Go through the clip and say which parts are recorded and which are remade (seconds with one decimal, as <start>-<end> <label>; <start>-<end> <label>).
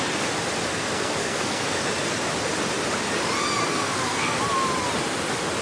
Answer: 0.0-0.7 recorded; 0.7-1.8 remade; 1.8-3.6 recorded; 3.6-4.4 remade; 4.4-5.6 recorded